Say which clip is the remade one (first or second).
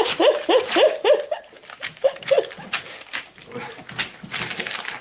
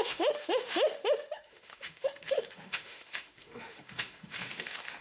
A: second